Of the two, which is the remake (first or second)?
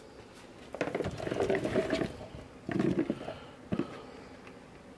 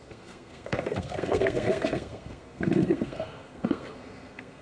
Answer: second